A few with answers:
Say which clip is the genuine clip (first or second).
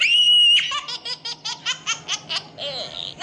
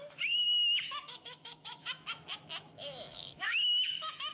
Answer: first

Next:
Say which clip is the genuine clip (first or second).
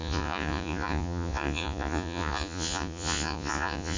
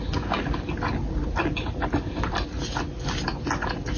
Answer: second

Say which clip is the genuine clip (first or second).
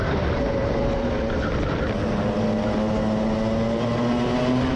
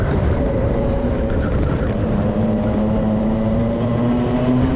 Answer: first